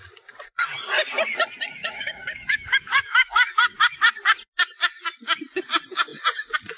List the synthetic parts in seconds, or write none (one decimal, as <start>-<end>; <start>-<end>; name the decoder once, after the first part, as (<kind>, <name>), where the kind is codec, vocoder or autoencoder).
1.8-3.3 (autoencoder, DAC-VAE)